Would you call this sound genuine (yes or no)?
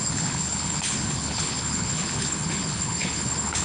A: no